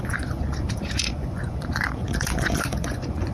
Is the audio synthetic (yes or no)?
yes